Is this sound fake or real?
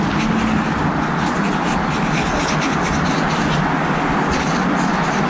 real